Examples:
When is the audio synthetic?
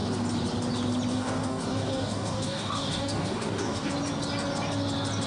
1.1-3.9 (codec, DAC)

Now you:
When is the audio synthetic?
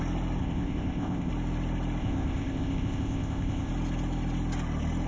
0.4-1.3 (codec, ZipCodec); 2.0-3.7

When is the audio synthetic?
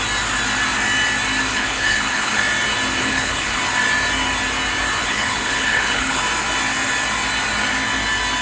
1.5-2.4 (codec, HILCodec); 3.0-3.6; 5.0-6.2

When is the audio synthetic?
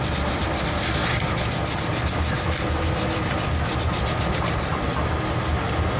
0.0-0.4 (vocoder, BigVGAN v2); 4.0-4.7; 5.6-6.0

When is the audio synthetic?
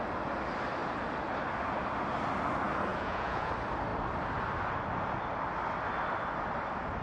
2.9-3.5 (vocoder, Vocos)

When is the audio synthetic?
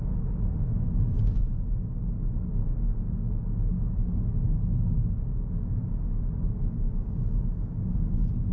2.6-7.2 (codec, DAC)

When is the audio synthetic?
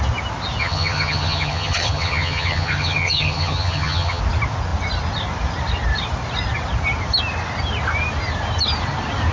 0.6-4.2 (vocoder, HiFi-GAN)